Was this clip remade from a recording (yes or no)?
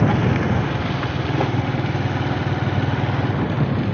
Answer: no